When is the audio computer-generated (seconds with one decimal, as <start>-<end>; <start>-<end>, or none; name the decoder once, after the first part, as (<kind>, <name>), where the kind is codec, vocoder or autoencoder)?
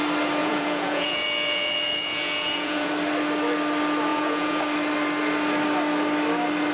0.4-2.9 (vocoder, Vocos); 4.1-4.6